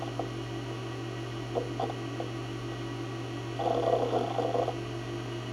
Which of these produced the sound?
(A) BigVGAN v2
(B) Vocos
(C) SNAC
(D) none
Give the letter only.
D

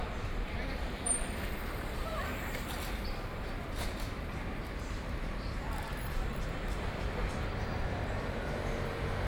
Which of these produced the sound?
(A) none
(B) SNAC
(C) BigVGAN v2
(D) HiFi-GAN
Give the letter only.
C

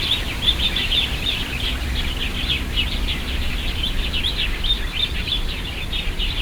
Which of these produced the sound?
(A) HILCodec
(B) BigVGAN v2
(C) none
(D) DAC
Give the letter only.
B